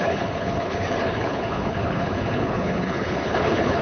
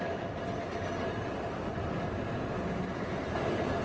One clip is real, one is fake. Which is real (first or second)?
second